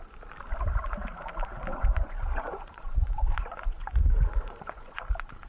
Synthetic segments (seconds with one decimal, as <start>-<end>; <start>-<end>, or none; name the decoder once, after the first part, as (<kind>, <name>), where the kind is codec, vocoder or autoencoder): 1.7-5.0 (vocoder, Vocos)

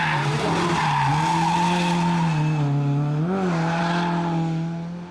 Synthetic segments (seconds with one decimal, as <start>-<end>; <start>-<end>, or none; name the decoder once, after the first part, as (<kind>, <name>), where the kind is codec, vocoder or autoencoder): none